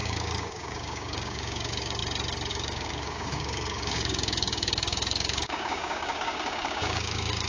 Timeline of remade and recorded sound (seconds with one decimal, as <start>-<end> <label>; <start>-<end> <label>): 0.0-2.0 remade; 2.0-2.5 recorded; 2.5-7.5 remade